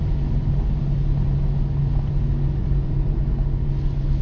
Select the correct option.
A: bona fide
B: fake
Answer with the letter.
A